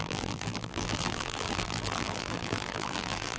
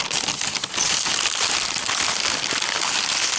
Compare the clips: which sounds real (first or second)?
second